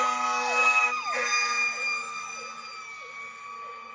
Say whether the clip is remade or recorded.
recorded